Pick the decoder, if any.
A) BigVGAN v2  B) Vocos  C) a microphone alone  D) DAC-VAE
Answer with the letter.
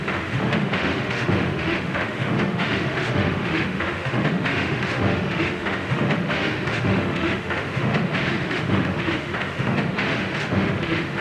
D